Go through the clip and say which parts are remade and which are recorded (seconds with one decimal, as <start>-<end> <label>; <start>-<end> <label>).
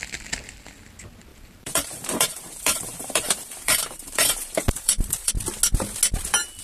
0.0-1.3 recorded; 1.3-5.3 remade; 5.3-6.6 recorded